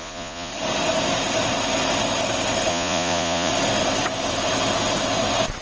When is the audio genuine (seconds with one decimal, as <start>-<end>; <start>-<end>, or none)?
0.5-2.7; 3.5-5.6